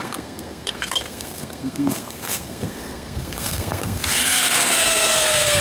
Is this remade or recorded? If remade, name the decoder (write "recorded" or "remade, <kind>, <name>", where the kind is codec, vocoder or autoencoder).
remade, codec, SNAC